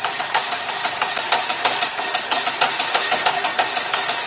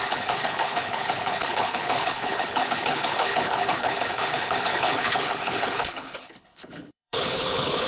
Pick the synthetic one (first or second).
second